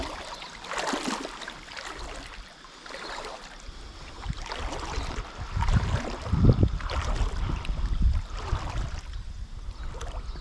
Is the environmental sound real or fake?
real